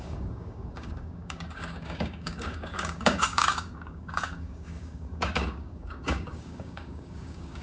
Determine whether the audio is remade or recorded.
remade